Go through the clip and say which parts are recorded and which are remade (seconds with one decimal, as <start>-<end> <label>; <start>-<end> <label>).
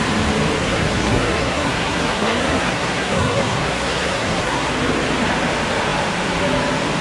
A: 0.0-0.6 recorded; 0.6-4.7 remade; 4.7-7.0 recorded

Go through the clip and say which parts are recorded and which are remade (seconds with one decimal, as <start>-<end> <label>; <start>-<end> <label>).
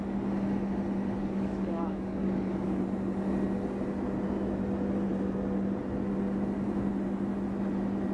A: 0.0-1.2 recorded; 1.2-2.8 remade; 2.8-8.1 recorded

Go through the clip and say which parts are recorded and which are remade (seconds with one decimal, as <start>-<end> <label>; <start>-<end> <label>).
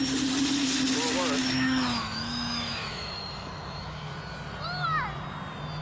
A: 0.0-1.4 recorded; 1.4-4.1 remade; 4.1-5.8 recorded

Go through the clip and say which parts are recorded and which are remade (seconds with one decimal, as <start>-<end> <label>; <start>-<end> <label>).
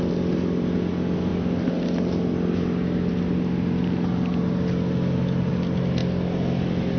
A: 0.0-7.0 recorded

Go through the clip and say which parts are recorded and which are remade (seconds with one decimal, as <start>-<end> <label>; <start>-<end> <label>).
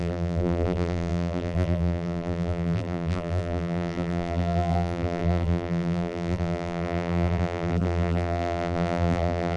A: 0.0-9.6 remade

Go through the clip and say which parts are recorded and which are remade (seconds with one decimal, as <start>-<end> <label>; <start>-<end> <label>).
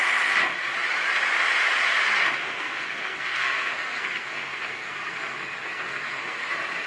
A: 0.0-2.4 recorded; 2.4-6.5 remade; 6.5-6.9 recorded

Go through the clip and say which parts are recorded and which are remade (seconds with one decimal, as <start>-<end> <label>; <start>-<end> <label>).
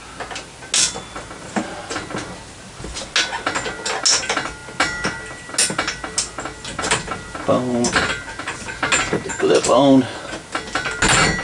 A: 0.0-11.4 recorded